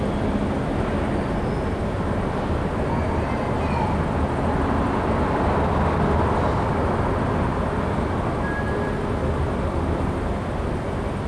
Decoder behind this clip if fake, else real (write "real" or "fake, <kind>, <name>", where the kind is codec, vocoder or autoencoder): real